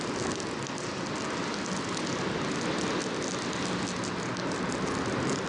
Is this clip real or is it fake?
real